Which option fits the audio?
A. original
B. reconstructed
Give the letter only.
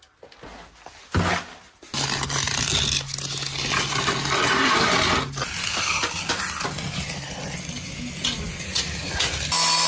A